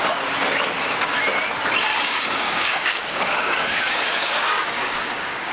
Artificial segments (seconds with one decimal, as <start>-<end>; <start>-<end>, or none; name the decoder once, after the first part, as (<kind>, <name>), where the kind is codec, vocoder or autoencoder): 1.9-5.5 (codec, DAC)